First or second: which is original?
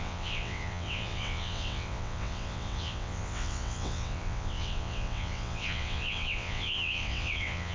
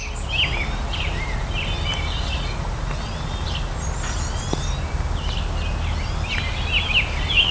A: second